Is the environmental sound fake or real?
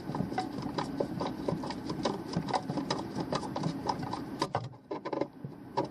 fake